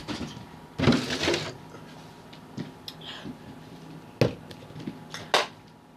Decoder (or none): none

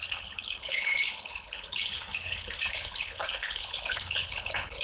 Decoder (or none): codec, HILCodec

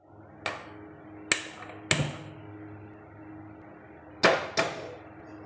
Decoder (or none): none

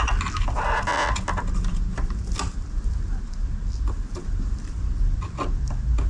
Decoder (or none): none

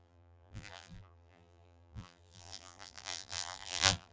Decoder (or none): vocoder, BigVGAN v2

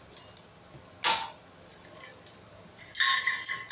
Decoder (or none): none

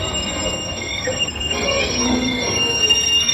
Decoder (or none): codec, SNAC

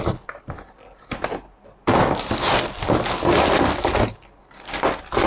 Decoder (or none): none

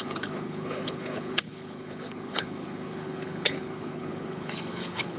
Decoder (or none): codec, HILCodec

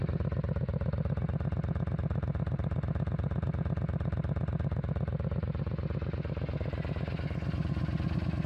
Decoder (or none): none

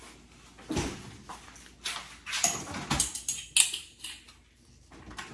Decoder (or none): none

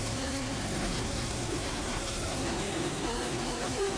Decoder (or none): codec, SNAC